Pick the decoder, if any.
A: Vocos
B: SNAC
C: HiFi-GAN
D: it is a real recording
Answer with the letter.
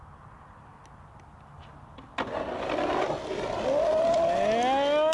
D